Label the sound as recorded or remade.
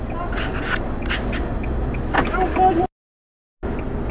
recorded